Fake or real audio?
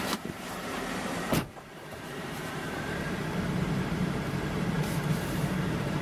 fake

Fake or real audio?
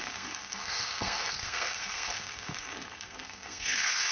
fake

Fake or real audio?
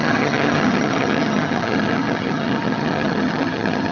fake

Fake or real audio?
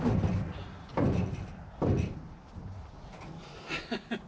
real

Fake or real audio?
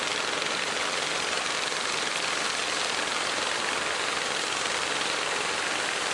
real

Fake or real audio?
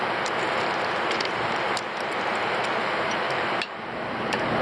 fake